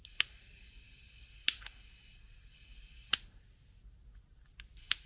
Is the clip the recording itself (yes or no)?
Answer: yes